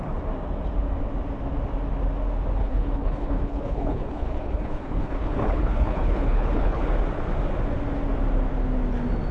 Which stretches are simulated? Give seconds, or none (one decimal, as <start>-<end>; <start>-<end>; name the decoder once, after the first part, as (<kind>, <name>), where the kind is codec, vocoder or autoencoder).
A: 2.6-6.8 (codec, HILCodec)